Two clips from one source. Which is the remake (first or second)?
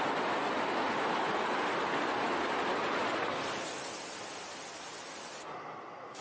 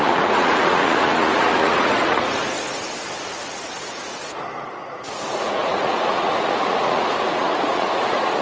second